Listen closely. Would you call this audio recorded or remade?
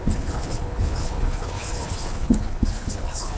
remade